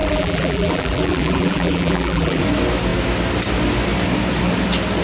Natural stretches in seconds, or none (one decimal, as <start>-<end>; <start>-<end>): 2.4-5.0

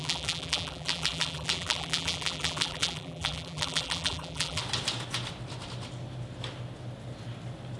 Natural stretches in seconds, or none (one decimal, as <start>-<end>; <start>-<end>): 4.6-7.8

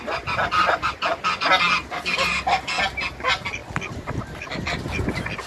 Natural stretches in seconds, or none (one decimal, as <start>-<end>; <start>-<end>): 0.0-3.6; 4.5-5.5